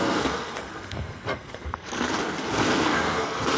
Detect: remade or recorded remade